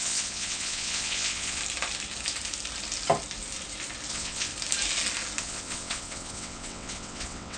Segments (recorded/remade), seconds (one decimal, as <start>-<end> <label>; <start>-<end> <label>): 0.0-1.6 remade; 1.6-4.1 recorded; 4.1-4.5 remade; 4.5-5.4 recorded; 5.4-7.6 remade